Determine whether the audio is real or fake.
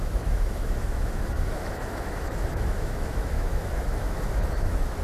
fake